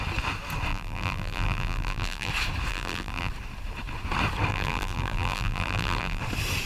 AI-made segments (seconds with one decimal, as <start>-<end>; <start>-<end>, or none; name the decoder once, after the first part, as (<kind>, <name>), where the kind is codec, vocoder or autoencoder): 0.7-2.3 (vocoder, BigVGAN v2); 2.7-3.3; 4.5-6.2